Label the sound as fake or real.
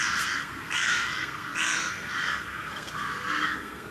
fake